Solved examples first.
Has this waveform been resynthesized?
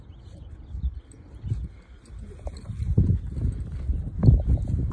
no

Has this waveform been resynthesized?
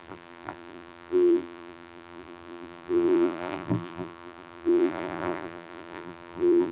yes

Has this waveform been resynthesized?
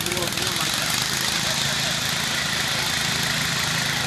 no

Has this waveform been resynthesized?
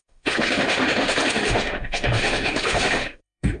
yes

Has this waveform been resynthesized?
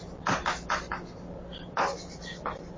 no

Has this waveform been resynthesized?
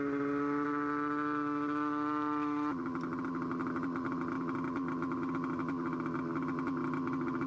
no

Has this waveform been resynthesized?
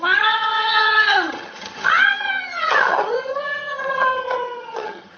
yes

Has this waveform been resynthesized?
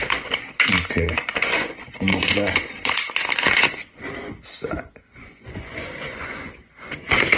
yes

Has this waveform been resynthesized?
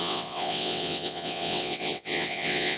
yes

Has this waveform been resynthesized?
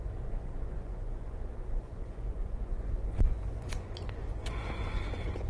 yes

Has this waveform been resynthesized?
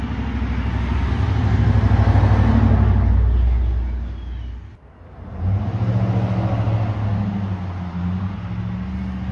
no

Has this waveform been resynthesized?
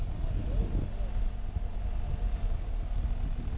no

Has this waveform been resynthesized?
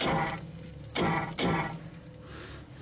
no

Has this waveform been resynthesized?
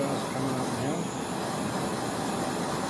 no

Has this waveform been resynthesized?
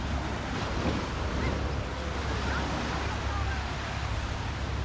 no